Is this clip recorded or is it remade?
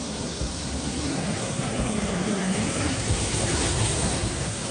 remade